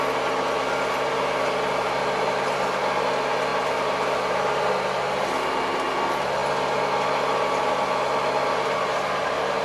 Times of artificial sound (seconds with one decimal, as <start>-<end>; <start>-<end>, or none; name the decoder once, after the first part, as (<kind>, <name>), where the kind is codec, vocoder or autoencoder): none